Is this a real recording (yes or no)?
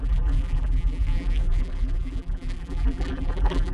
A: no